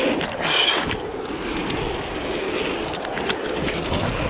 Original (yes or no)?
yes